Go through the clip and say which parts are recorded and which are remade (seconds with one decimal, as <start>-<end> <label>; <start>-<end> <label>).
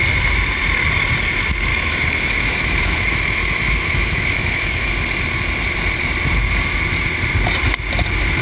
0.0-1.7 recorded; 1.7-4.9 remade; 4.9-8.4 recorded